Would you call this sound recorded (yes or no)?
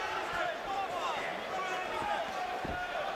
yes